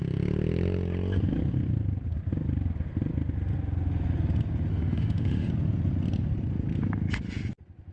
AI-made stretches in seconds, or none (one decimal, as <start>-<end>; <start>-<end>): 4.7-5.5

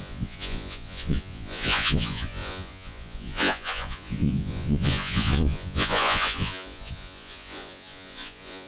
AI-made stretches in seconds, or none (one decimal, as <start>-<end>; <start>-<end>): 0.0-8.7

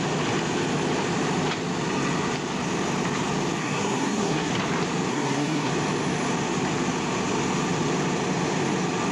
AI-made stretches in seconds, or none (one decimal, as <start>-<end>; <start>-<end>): 3.6-4.5; 5.1-5.7

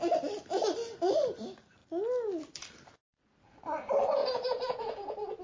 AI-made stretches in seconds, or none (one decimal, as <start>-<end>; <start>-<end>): 4.2-5.4

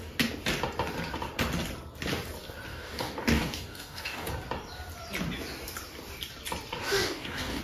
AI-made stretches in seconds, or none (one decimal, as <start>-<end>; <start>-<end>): 2.7-4.3; 6.8-7.6

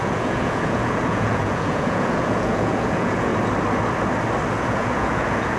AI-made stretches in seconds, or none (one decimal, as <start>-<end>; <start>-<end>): 0.0-3.3; 4.5-5.6